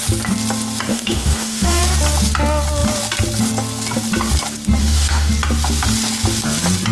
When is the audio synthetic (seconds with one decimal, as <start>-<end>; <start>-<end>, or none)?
0.9-1.8; 4.8-5.3